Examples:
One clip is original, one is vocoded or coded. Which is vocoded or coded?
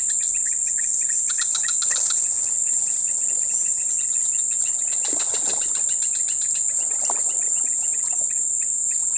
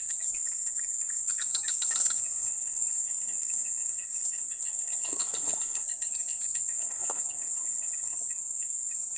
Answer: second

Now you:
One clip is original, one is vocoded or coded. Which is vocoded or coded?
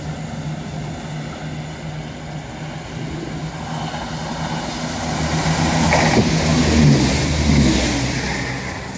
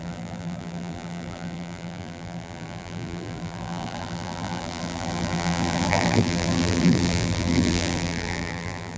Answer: second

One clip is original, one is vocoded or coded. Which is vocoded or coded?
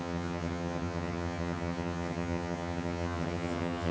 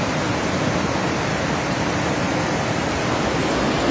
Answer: first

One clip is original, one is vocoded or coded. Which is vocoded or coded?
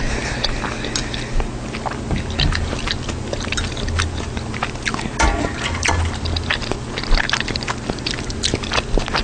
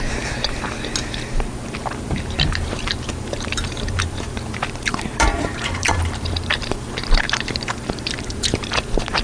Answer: second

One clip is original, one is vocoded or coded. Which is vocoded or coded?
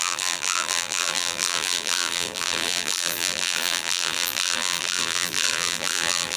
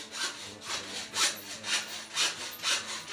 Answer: first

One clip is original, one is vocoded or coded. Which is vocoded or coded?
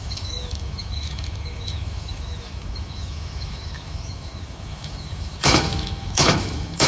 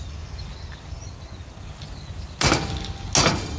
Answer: first